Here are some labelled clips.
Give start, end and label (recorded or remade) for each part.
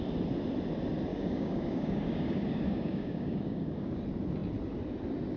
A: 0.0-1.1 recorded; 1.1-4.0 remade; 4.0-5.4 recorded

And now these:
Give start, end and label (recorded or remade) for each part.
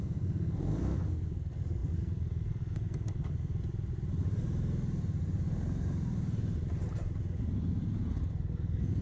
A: 0.0-3.5 remade; 3.5-8.3 recorded; 8.3-9.0 remade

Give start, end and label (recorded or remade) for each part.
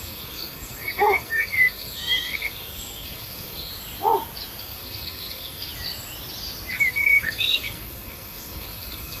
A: 0.0-3.7 remade; 3.7-4.6 recorded; 4.6-5.7 remade; 5.7-6.9 recorded; 6.9-9.2 remade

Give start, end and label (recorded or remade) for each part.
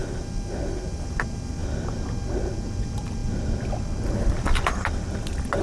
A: 0.0-5.6 recorded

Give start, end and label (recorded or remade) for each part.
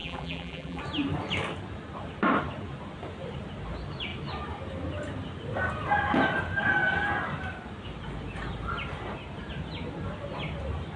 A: 0.0-0.8 remade; 0.8-11.0 recorded